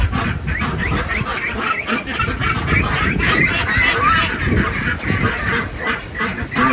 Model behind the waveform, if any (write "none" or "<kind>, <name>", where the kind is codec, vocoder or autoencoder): none